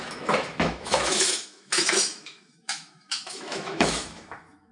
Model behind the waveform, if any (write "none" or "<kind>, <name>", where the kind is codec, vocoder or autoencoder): autoencoder, DAC-VAE